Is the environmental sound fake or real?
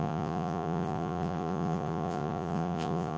fake